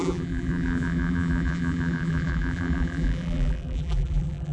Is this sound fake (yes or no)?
yes